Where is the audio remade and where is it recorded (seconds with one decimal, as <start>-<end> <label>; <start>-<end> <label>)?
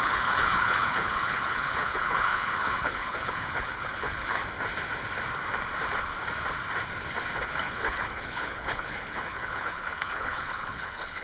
0.0-4.4 remade; 4.4-7.5 recorded; 7.5-11.2 remade